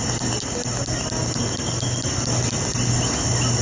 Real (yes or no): yes